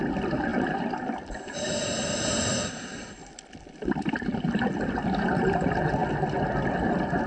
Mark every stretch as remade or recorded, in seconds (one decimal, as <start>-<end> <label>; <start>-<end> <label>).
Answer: 0.0-0.5 recorded; 0.5-4.9 remade; 4.9-7.3 recorded